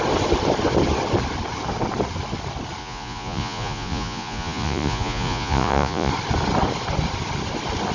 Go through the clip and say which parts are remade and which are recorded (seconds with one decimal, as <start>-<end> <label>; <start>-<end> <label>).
0.0-2.8 recorded; 2.8-6.1 remade; 6.1-7.9 recorded

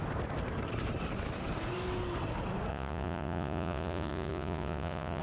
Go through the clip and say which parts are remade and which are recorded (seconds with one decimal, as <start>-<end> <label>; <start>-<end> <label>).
0.0-2.7 recorded; 2.7-5.2 remade

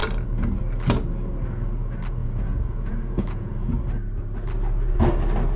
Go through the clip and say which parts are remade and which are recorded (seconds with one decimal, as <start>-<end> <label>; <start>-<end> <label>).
0.0-2.2 recorded; 2.2-3.7 remade; 3.7-5.6 recorded

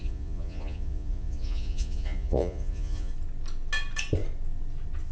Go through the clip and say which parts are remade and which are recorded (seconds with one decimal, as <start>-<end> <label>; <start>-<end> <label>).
0.0-3.1 remade; 3.1-5.1 recorded

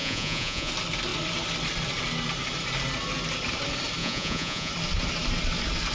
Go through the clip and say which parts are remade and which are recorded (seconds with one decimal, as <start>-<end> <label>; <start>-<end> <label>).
0.0-0.7 remade; 0.7-4.0 recorded; 4.0-4.7 remade; 4.7-5.9 recorded

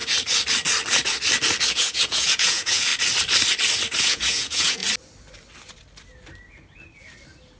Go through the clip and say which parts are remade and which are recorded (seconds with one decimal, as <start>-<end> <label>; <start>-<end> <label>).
0.0-1.7 recorded; 1.7-2.9 remade; 2.9-4.0 recorded; 4.0-4.8 remade; 4.8-7.6 recorded

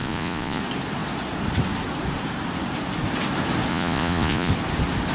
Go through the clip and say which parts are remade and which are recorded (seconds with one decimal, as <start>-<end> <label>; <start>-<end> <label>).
0.0-0.6 remade; 0.6-3.7 recorded; 3.7-4.5 remade; 4.5-5.1 recorded